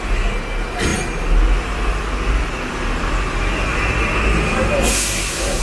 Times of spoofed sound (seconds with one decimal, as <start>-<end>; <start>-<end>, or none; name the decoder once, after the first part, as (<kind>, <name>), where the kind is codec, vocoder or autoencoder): 4.9-5.6 (codec, SNAC)